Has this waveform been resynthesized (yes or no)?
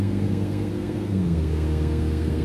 yes